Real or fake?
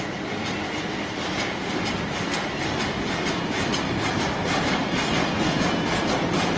real